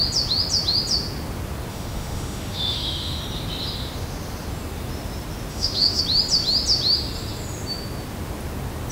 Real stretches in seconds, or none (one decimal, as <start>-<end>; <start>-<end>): 0.0-1.7; 3.2-5.5; 6.0-8.9